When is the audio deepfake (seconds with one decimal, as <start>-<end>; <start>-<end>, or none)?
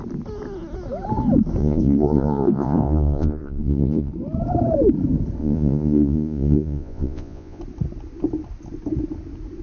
1.6-4.1; 5.4-7.6